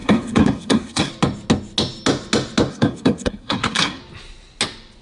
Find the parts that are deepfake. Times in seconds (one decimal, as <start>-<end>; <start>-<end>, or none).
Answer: 0.0-1.1; 2.7-4.0